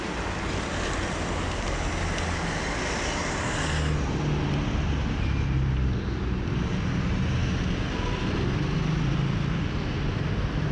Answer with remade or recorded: recorded